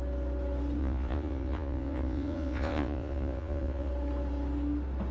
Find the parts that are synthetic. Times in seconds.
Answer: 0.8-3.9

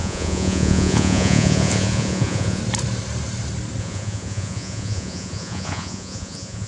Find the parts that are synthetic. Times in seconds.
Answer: 0.0-2.6; 3.8-6.7

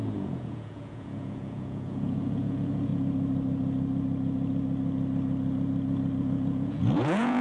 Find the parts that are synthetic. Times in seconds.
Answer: 0.0-2.9; 6.2-7.4